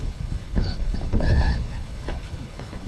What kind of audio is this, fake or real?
fake